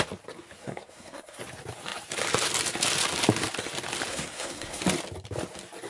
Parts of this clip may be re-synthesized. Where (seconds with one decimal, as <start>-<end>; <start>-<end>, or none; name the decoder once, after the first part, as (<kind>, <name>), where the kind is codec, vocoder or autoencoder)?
0.6-1.4 (codec, SNAC); 4.1-4.8